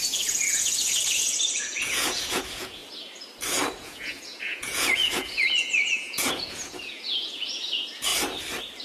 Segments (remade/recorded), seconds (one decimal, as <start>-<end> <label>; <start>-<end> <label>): 0.0-2.8 remade; 2.8-3.8 recorded; 3.8-8.1 remade; 8.1-8.8 recorded